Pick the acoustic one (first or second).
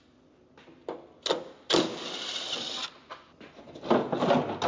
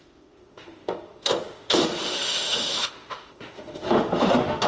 first